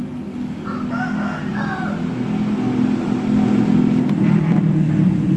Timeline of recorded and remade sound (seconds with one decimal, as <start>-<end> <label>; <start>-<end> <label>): 0.0-5.4 recorded